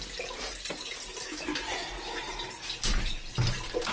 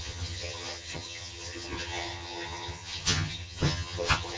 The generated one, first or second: second